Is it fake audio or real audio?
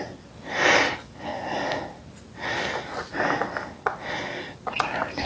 real